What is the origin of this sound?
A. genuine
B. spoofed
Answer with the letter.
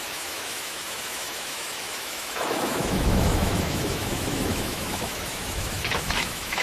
B